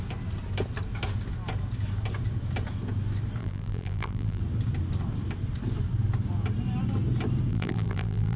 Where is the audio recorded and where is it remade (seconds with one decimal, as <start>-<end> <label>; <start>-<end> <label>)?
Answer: 0.0-3.4 recorded; 3.4-4.4 remade; 4.4-7.5 recorded; 7.5-8.4 remade